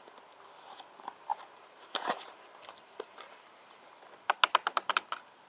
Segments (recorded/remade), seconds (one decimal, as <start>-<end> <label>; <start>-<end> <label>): 0.0-1.3 recorded; 1.3-4.0 remade; 4.0-5.5 recorded